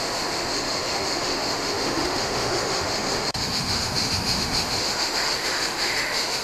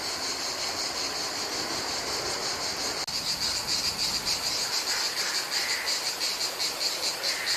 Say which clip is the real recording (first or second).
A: second